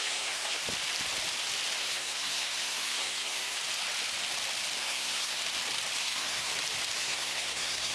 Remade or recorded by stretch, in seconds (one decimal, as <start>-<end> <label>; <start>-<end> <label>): 0.0-0.6 remade; 0.6-1.8 recorded; 1.8-3.6 remade; 3.6-4.8 recorded; 4.8-5.4 remade; 5.4-6.0 recorded; 6.0-6.5 remade; 6.5-7.0 recorded; 7.0-7.9 remade